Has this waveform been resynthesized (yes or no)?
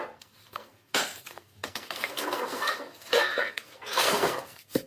yes